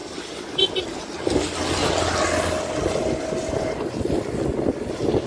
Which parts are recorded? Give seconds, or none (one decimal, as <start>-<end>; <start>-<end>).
0.0-3.2